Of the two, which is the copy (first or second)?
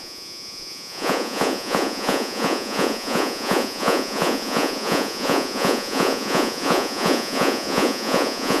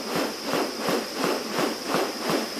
first